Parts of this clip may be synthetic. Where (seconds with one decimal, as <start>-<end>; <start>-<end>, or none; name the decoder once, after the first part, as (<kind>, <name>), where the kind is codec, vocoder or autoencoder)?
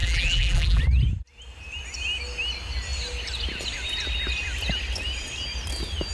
0.0-0.8 (vocoder, BigVGAN v2)